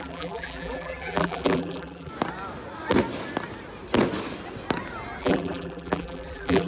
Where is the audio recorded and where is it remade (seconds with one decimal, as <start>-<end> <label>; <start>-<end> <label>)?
0.0-2.1 remade; 2.1-5.2 recorded; 5.2-6.7 remade